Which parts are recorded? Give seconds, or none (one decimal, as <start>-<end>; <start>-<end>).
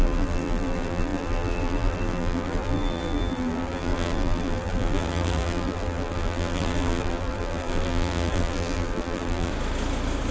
9.5-10.3